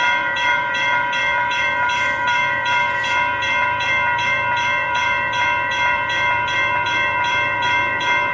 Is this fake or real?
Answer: fake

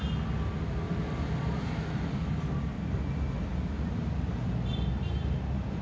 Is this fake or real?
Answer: real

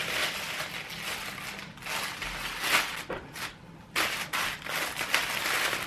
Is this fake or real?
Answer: real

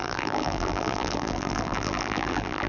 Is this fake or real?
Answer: fake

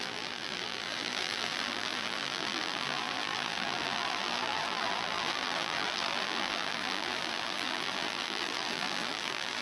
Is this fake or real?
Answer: fake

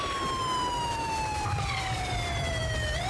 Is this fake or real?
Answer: fake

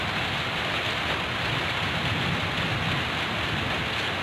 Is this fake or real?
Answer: real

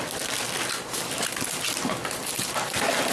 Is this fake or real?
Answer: real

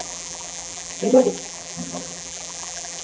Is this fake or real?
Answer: fake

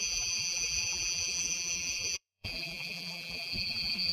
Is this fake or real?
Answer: fake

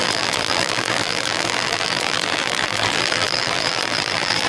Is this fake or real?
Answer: fake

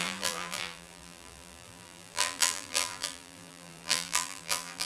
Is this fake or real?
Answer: fake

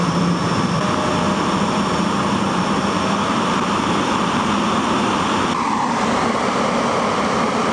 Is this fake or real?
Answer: fake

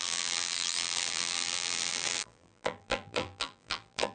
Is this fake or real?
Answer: fake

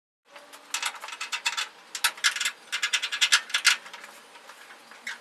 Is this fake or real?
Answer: real